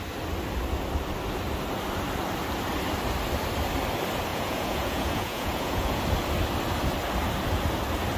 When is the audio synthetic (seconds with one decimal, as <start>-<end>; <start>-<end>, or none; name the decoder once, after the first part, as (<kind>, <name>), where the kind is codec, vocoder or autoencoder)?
4.3-6.0 (vocoder, Vocos)